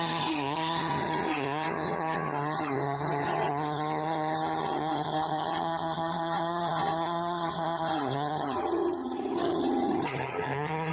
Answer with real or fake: fake